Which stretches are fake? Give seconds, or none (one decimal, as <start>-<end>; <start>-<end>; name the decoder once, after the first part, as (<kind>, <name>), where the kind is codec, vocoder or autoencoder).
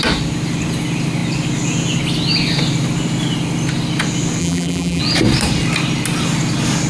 4.4-5.0 (vocoder, BigVGAN v2)